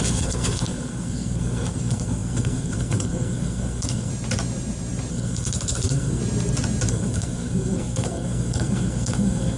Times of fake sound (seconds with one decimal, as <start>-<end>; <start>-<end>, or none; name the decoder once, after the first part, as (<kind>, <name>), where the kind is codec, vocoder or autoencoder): 0.0-4.1 (codec, SNAC); 5.1-6.2; 6.9-9.6